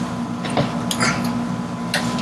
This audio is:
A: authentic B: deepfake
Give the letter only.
A